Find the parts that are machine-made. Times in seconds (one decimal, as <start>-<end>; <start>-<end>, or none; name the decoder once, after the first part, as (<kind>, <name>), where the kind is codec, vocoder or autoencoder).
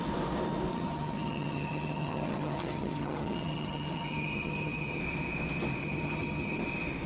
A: 0.7-5.0 (vocoder, HiFi-GAN); 5.8-6.6